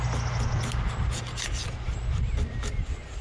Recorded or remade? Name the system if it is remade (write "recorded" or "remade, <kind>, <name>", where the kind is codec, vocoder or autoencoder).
recorded